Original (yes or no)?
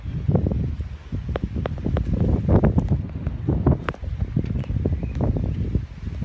yes